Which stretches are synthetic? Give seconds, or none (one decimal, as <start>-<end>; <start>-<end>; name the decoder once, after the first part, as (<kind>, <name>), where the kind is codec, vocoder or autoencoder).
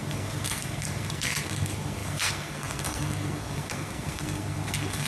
0.0-5.1 (codec, SNAC)